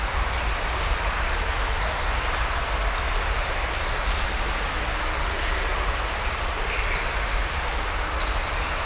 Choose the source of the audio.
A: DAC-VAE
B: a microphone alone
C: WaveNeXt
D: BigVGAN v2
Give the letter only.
B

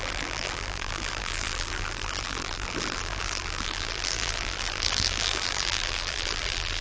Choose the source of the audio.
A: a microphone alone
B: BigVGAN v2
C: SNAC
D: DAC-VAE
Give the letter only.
B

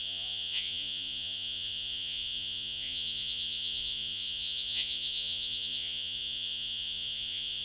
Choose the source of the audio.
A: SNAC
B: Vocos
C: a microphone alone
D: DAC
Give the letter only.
B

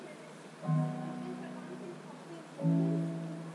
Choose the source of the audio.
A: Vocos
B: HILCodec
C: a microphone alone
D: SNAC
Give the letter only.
C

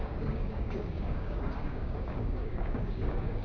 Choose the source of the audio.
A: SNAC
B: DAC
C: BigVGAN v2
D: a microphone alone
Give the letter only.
B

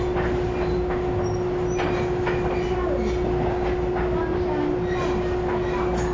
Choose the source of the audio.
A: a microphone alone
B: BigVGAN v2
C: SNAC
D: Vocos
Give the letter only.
A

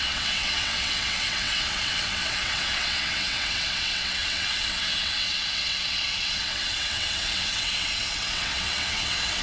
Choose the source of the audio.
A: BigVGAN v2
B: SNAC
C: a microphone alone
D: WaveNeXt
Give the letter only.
D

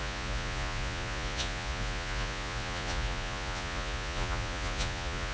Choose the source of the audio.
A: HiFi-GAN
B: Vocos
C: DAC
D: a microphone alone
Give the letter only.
B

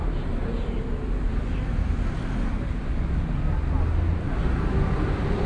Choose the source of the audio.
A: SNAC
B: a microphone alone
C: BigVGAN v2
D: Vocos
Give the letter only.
B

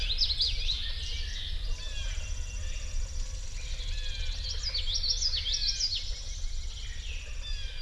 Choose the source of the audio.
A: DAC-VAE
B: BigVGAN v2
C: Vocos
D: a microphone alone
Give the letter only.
D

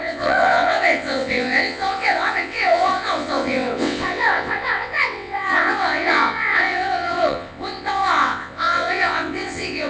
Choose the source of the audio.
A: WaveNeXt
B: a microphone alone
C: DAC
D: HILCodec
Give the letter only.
A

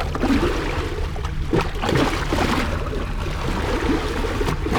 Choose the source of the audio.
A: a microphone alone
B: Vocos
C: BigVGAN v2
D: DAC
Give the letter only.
A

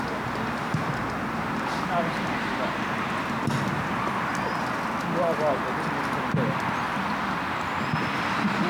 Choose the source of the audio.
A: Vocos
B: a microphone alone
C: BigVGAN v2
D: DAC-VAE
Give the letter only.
B